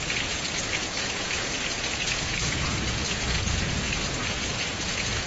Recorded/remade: remade